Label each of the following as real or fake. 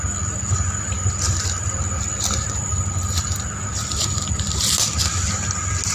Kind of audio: real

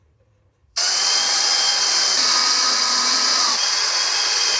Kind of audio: fake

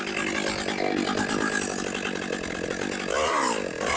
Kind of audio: real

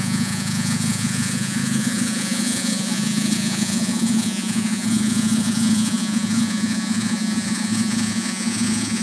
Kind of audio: fake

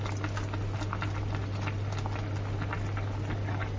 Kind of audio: real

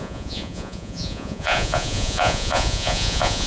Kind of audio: fake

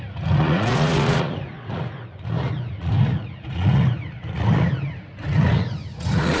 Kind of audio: fake